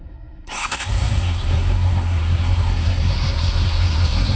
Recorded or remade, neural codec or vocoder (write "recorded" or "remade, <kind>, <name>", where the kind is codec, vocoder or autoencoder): remade, codec, SNAC